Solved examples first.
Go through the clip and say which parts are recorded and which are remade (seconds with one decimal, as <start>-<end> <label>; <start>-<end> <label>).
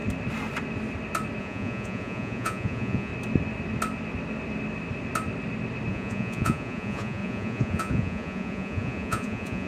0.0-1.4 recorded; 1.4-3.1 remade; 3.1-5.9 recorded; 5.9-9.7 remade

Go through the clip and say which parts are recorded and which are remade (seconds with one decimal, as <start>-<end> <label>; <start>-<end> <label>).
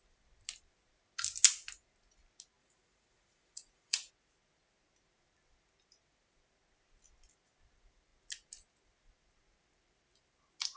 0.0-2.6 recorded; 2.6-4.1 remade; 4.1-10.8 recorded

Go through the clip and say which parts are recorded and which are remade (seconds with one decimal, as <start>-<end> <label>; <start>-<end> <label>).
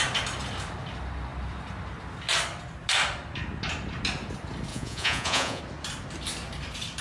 0.0-4.7 recorded; 4.7-5.6 remade; 5.6-7.0 recorded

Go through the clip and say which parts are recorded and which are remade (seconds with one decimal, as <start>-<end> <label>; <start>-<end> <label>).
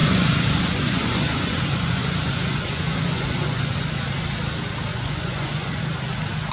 0.0-3.9 remade; 3.9-4.9 recorded; 4.9-5.8 remade; 5.8-6.5 recorded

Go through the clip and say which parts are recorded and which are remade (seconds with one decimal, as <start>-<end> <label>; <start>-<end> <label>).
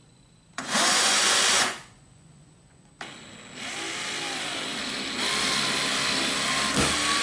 0.0-2.9 remade; 2.9-7.2 recorded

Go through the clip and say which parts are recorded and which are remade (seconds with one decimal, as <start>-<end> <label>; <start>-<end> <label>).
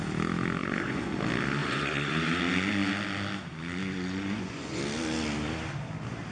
0.0-0.6 recorded; 0.6-1.2 remade; 1.2-1.6 recorded; 1.6-2.4 remade; 2.4-3.8 recorded; 3.8-4.8 remade; 4.8-6.3 recorded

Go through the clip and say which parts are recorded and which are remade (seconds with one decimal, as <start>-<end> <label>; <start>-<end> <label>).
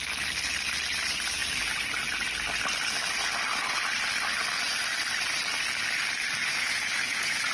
0.0-6.4 recorded; 6.4-7.5 remade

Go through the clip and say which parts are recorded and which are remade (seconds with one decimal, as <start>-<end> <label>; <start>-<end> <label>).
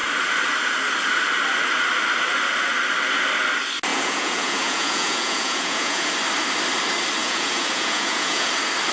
0.0-3.9 recorded; 3.9-6.1 remade; 6.1-7.2 recorded; 7.2-8.5 remade; 8.5-8.9 recorded